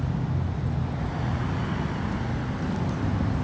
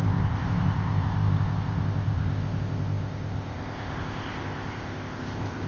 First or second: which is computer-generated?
second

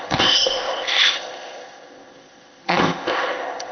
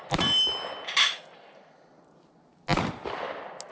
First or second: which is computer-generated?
first